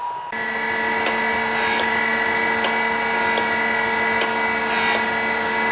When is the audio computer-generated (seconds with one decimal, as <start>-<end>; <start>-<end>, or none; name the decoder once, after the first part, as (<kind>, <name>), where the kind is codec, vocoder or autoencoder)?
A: none

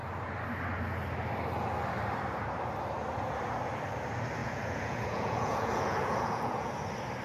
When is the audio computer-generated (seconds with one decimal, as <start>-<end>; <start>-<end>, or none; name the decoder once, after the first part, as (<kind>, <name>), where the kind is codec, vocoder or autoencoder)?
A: 4.4-6.7 (vocoder, Vocos)